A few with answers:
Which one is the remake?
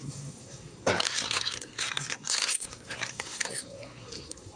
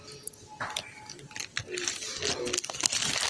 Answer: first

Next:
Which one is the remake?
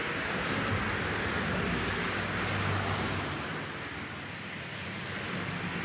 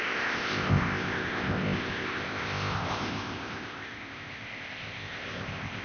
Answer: second